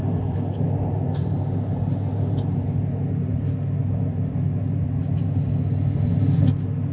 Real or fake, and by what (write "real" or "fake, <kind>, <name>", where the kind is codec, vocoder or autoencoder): real